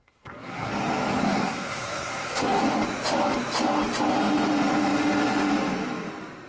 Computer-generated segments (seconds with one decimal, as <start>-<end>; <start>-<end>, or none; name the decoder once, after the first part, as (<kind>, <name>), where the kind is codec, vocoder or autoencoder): 0.0-0.7 (codec, SNAC); 1.2-2.6